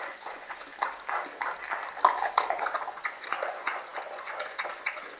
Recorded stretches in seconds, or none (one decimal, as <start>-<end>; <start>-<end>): 0.7-2.3